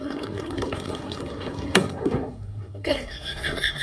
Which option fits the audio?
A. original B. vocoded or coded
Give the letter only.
B